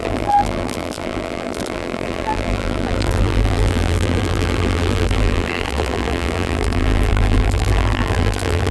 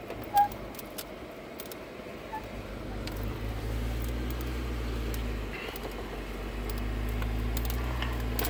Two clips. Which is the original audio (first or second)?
second